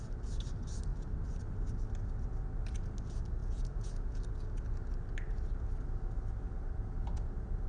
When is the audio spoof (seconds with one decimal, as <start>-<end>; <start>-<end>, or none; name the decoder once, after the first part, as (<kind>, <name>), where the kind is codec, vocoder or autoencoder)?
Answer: 3.4-4.2 (vocoder, Vocos)